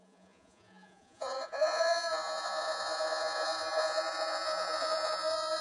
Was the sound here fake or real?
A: fake